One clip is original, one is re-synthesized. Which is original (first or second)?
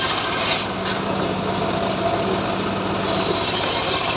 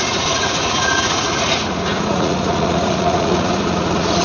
first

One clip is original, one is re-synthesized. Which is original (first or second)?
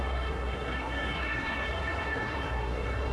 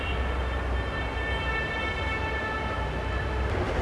second